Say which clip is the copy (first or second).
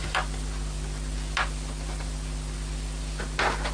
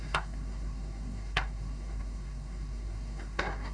second